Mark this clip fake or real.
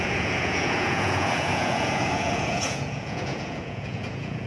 fake